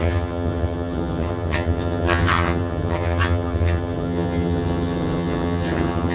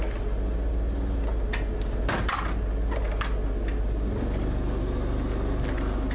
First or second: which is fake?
first